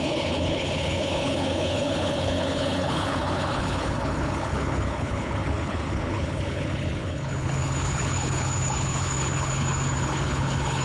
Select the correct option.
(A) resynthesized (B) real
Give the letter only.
A